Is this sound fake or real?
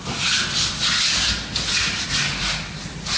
real